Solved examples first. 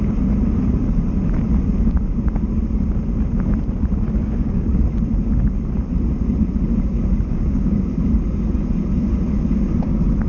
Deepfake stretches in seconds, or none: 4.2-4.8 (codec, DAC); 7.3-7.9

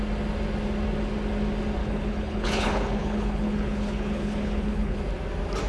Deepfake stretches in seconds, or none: 1.8-5.0 (codec, HILCodec)

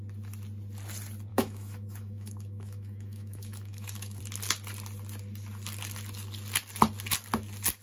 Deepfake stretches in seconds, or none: 1.3-4.2 (autoencoder, DAC-VAE)

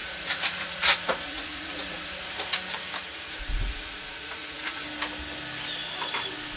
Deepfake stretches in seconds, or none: 0.0-2.5 (vocoder, Vocos); 3.0-4.8

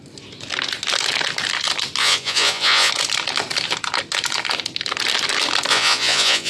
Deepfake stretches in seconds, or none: 2.0-2.9 (vocoder, Vocos); 5.7-6.5